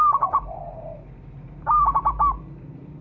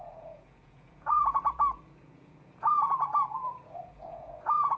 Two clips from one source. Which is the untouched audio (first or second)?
first